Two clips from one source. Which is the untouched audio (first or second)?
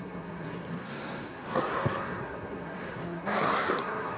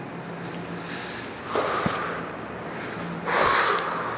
second